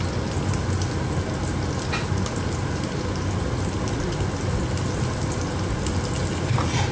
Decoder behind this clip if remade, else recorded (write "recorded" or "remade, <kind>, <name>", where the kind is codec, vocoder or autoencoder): recorded